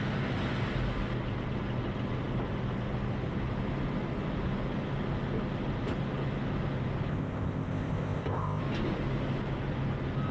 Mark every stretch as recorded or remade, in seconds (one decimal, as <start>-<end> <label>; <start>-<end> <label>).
0.0-7.1 recorded; 7.1-8.6 remade; 8.6-10.3 recorded